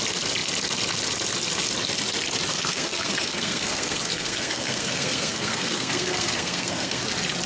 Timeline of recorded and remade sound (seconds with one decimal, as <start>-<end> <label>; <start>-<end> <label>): 0.0-2.5 recorded; 2.5-7.0 remade; 7.0-7.5 recorded